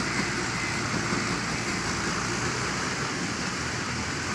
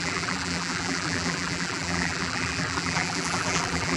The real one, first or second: first